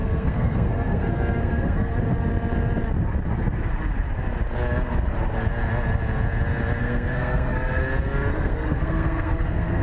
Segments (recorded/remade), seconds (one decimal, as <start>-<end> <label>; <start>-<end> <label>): 0.0-1.9 remade; 1.9-6.8 recorded; 6.8-7.8 remade; 7.8-8.3 recorded; 8.3-9.8 remade